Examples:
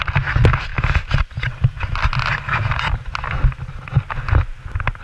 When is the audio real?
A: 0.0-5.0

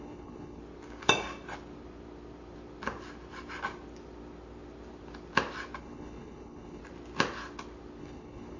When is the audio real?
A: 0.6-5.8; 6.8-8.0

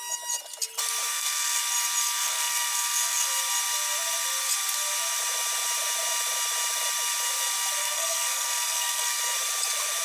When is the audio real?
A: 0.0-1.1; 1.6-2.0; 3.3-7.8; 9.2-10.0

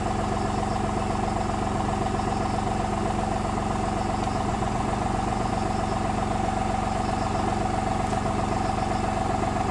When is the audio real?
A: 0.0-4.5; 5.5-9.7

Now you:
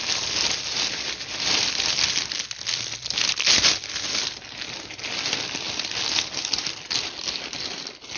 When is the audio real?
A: 0.0-8.2

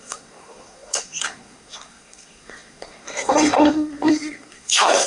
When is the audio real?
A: none

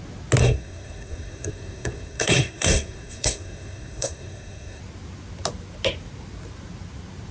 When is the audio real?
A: 0.0-0.4; 4.8-7.3

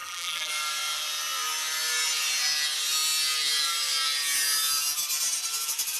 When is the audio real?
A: 0.5-6.0